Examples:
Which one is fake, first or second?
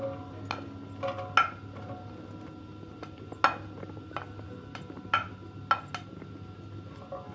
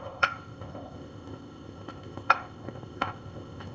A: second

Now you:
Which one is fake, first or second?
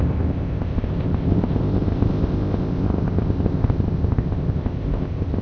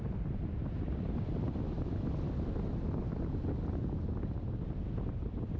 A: first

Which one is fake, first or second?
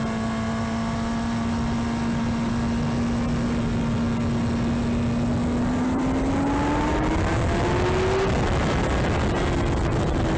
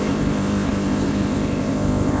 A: second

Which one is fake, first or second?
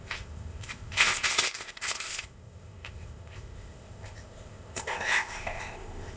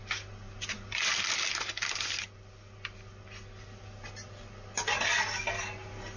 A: first